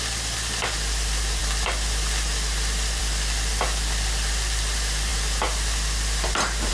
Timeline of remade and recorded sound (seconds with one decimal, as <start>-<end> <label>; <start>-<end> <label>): 0.0-6.7 recorded